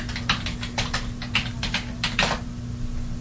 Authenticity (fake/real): real